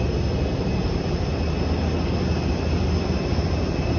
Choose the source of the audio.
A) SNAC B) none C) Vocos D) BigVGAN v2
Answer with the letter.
B